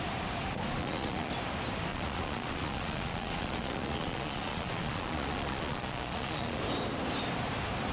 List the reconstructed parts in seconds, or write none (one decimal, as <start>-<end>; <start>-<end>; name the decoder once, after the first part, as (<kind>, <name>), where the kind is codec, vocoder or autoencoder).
0.8-1.3 (vocoder, Vocos); 1.9-6.6